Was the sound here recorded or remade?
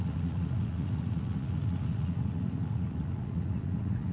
remade